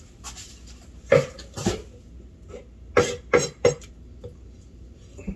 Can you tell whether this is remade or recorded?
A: recorded